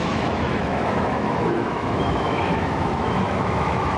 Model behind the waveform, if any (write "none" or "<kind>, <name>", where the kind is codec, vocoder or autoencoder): autoencoder, DAC-VAE